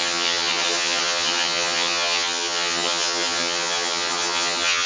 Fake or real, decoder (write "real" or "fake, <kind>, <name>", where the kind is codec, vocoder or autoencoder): fake, vocoder, HiFi-GAN